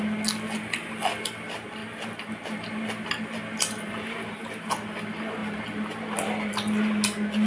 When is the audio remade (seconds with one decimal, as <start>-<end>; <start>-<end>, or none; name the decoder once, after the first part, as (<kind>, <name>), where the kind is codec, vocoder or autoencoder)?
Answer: none